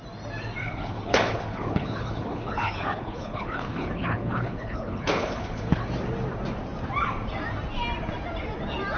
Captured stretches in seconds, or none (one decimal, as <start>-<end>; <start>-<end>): 0.0-0.6; 5.9-9.0